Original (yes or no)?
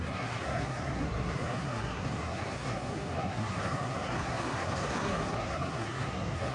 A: no